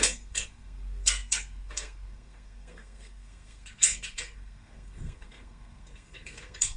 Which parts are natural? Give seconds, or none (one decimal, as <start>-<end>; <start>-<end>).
none